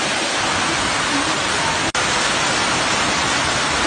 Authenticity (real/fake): real